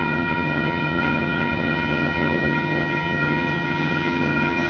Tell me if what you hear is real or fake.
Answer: fake